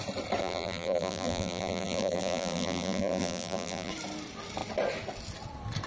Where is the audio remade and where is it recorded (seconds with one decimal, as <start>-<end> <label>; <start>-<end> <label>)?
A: 0.0-0.4 recorded; 0.4-3.9 remade; 3.9-5.9 recorded